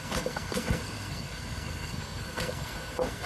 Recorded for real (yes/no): no